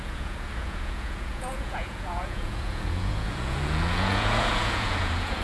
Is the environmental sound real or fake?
fake